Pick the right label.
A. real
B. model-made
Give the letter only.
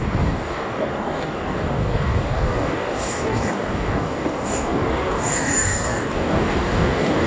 B